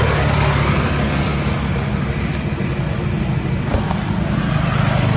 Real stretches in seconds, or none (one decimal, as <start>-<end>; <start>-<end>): 0.0-5.2